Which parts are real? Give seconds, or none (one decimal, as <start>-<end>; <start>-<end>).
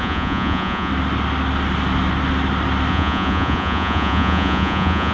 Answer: 0.9-2.9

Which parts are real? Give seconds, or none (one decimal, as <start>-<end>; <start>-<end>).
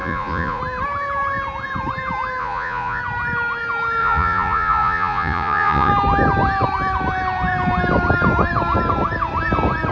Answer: 0.6-2.4; 3.0-4.0; 5.9-9.9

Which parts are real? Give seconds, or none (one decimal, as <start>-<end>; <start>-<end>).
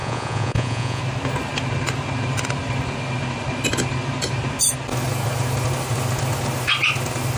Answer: 1.0-7.4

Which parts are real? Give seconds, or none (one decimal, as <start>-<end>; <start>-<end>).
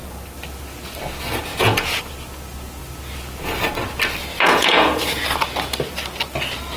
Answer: 0.0-1.5; 2.0-4.3; 5.2-6.8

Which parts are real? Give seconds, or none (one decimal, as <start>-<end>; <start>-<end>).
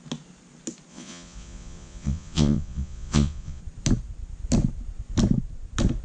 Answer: 0.0-0.9; 3.6-6.0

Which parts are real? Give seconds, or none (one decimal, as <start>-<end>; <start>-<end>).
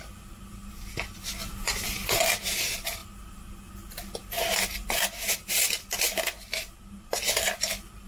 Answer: 0.0-8.1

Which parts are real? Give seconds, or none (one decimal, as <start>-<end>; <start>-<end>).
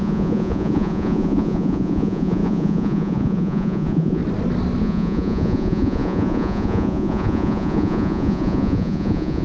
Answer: 4.2-4.8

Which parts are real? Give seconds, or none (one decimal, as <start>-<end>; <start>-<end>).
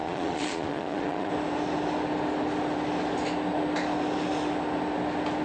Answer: 1.3-5.4